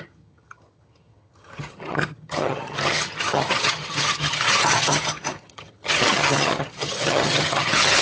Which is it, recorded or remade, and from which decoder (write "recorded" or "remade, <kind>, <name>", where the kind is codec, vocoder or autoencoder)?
remade, vocoder, HiFi-GAN